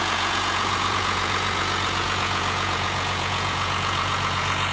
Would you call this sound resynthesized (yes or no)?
yes